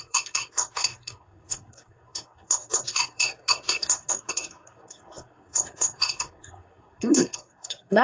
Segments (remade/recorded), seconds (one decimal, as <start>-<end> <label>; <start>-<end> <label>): 0.0-8.0 remade